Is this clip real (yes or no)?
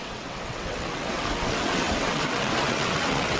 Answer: no